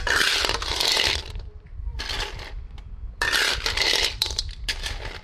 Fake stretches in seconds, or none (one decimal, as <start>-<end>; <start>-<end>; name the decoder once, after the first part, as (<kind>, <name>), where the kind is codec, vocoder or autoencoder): 0.0-5.2 (vocoder, BigVGAN v2)